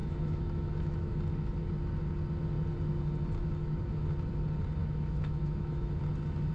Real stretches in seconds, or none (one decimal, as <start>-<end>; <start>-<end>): 1.2-3.6; 4.1-4.8; 6.0-6.5